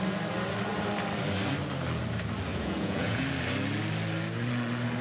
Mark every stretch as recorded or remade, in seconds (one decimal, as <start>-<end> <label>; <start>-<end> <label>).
0.0-2.5 recorded; 2.5-3.2 remade; 3.2-5.0 recorded